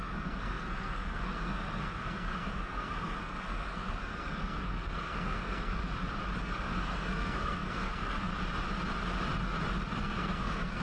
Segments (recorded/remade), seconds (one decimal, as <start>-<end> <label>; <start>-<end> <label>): 0.0-5.8 remade; 5.8-6.4 recorded; 6.4-8.3 remade; 8.3-10.0 recorded; 10.0-10.8 remade

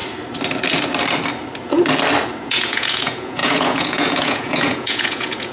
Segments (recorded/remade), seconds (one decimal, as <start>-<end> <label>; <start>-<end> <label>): 0.0-2.5 recorded; 2.5-5.5 remade

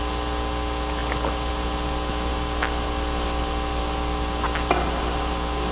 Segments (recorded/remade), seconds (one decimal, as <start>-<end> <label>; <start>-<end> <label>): 0.0-5.7 recorded

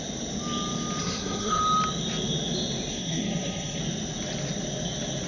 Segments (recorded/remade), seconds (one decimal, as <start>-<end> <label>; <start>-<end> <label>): 0.0-1.0 recorded; 1.0-1.6 remade; 1.6-2.9 recorded; 2.9-3.8 remade; 3.8-5.3 recorded

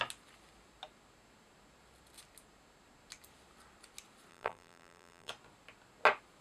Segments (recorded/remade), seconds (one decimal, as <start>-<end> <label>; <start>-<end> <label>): 0.0-4.3 recorded; 4.3-5.3 remade; 5.3-6.4 recorded

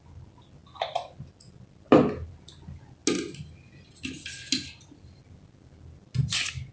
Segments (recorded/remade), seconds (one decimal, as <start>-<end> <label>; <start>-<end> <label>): 0.0-6.7 recorded

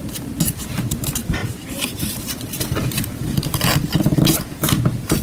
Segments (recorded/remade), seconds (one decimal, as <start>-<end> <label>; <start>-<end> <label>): 0.0-5.2 remade